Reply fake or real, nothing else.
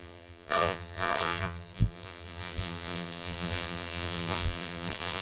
fake